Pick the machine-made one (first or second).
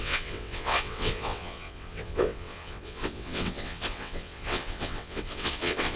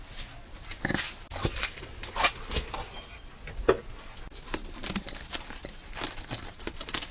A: first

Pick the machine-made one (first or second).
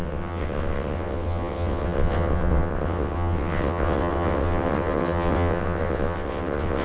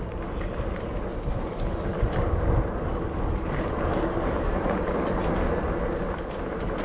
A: first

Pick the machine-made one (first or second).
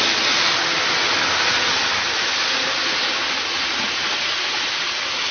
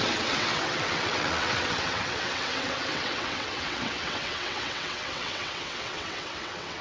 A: second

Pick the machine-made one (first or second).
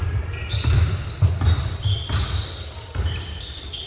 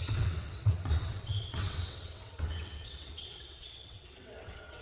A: second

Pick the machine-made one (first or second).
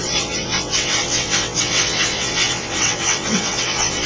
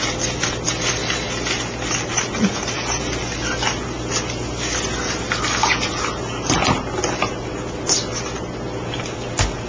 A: first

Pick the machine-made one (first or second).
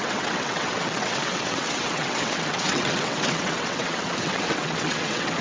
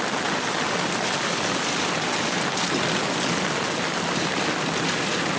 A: first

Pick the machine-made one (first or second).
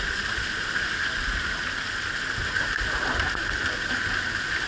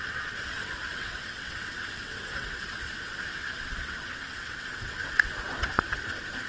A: second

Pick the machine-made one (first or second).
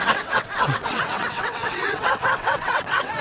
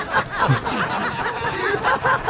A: first